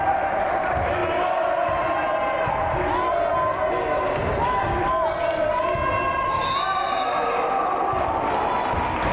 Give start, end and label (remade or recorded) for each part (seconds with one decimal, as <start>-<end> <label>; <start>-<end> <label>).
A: 0.0-9.1 recorded